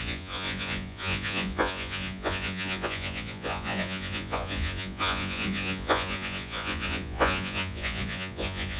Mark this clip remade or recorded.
remade